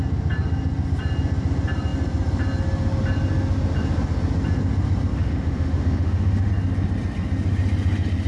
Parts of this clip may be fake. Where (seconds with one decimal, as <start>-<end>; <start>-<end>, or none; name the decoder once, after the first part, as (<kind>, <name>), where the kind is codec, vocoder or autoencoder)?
5.1-6.5 (autoencoder, DAC-VAE)